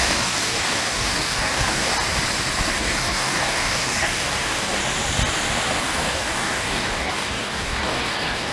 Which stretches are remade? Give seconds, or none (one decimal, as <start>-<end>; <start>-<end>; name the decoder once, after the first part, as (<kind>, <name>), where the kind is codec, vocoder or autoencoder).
0.0-1.9 (codec, DAC); 2.7-4.8; 5.8-8.5